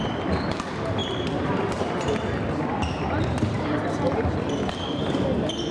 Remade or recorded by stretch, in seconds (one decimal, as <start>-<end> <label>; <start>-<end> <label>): 0.0-1.0 recorded; 1.0-4.0 remade; 4.0-5.7 recorded